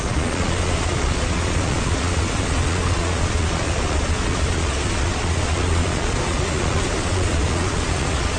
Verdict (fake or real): fake